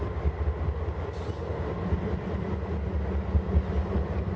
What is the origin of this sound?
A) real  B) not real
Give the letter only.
A